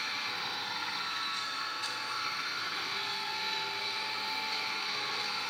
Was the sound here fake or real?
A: fake